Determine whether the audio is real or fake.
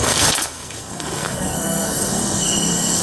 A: fake